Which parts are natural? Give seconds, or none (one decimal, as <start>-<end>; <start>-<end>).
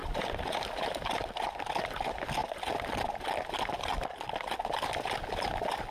0.0-5.9